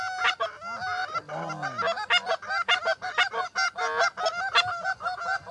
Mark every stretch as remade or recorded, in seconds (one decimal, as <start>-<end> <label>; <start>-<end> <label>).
0.0-5.5 recorded